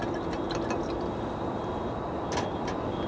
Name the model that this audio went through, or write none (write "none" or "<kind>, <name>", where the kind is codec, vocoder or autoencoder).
none